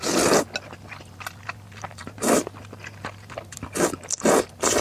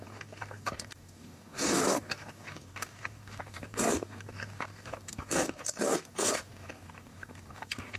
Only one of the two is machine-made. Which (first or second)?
second